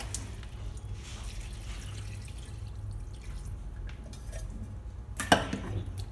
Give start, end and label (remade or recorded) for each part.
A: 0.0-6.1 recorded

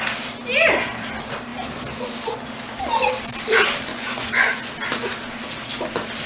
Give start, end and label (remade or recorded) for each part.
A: 0.0-3.9 recorded; 3.9-4.7 remade; 4.7-6.3 recorded

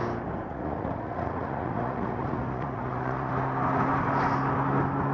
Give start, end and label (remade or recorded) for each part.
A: 0.0-0.5 recorded; 0.5-3.3 remade; 3.3-5.1 recorded

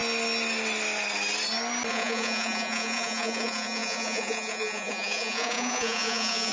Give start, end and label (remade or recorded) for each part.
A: 0.0-1.9 recorded; 1.9-6.5 remade

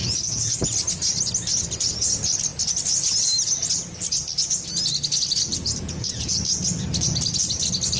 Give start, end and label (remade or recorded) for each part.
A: 0.0-0.6 remade; 0.6-5.5 recorded; 5.5-6.4 remade; 6.4-8.0 recorded

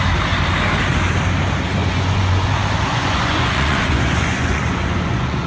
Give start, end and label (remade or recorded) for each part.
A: 0.0-1.8 recorded; 1.8-2.5 remade; 2.5-2.9 recorded; 2.9-5.5 remade

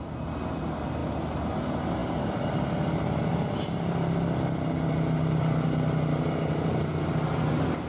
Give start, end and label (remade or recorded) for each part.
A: 0.0-7.9 recorded